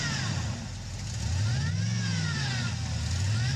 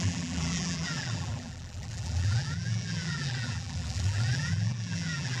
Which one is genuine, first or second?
first